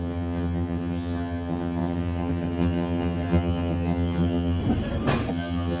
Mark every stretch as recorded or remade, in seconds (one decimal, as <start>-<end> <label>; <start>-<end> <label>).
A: 0.0-4.6 remade; 4.6-5.3 recorded; 5.3-5.8 remade